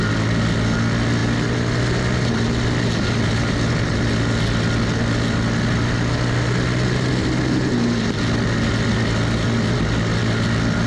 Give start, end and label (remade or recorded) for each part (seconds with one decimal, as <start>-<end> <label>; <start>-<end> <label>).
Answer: 0.0-10.9 recorded